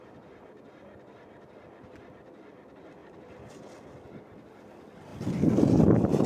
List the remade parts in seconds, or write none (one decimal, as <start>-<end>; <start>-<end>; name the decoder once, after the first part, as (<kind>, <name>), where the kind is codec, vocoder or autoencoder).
none

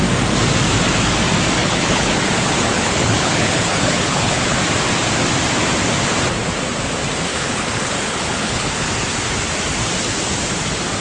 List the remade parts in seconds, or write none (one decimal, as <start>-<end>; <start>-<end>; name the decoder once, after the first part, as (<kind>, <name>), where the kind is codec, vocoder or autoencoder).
1.6-4.6 (codec, HILCodec); 7.3-8.9

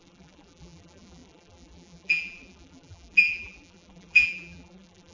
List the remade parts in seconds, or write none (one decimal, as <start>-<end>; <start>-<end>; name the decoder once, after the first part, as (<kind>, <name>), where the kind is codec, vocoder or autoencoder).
0.0-5.1 (vocoder, BigVGAN v2)

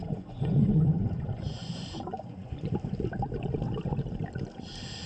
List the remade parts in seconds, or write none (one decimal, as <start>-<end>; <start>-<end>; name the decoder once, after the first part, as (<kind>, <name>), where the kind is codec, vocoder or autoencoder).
0.0-2.7 (vocoder, Vocos)

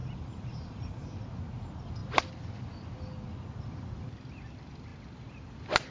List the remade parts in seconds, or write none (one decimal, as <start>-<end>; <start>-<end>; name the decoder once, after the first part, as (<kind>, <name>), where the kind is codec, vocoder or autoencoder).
0.0-1.2 (vocoder, BigVGAN v2)

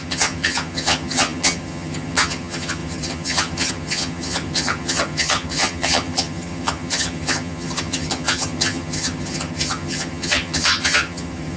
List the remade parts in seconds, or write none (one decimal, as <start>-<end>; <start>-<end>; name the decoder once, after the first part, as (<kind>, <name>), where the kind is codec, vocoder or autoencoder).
0.0-11.6 (vocoder, HiFi-GAN)